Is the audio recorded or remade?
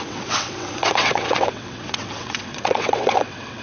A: remade